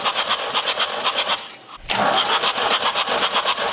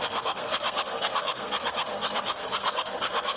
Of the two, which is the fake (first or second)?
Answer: second